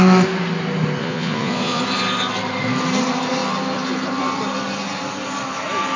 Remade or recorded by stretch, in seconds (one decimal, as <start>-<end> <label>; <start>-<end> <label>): 0.0-1.0 recorded; 1.0-1.8 remade; 1.8-6.0 recorded